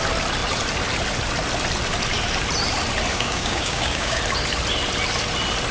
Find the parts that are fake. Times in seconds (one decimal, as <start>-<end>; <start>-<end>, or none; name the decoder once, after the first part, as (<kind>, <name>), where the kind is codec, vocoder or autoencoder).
3.1-4.2 (codec, DAC)